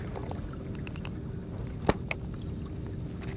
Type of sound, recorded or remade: recorded